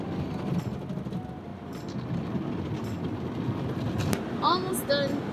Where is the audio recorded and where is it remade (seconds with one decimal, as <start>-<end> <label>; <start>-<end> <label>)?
0.0-5.3 recorded